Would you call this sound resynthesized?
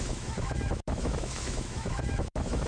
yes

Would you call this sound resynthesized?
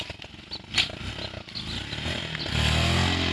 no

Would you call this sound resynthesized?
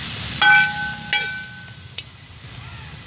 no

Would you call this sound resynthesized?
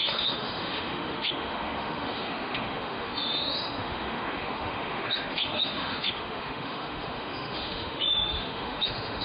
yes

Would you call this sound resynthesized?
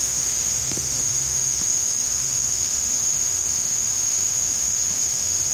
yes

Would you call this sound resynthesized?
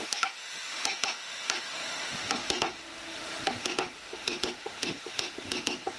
yes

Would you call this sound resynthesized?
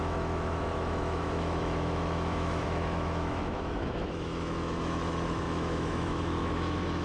yes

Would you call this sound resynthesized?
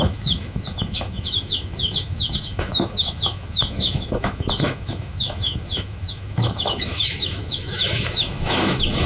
yes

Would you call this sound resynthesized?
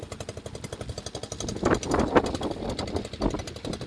no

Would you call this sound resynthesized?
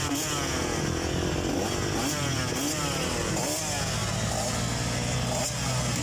no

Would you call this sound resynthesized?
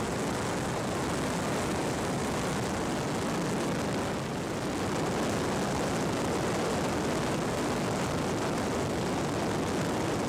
no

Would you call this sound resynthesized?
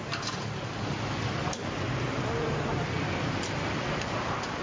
no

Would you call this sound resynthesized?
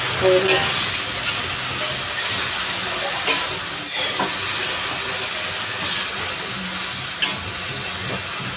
no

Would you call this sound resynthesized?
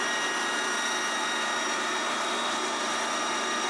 no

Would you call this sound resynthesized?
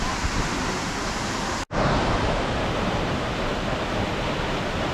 no